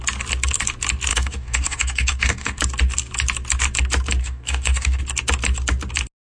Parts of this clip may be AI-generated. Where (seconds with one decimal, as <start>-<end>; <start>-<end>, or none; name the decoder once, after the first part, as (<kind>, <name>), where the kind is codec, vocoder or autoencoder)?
1.1-2.6 (codec, DAC); 4.2-5.0